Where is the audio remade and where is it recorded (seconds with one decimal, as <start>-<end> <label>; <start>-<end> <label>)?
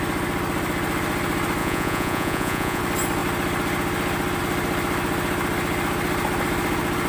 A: 0.0-1.6 recorded; 1.6-2.8 remade; 2.8-7.1 recorded